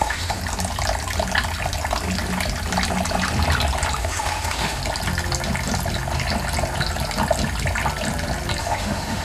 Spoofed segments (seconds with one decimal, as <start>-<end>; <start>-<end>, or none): 0.0-0.4; 4.0-4.8; 8.6-9.2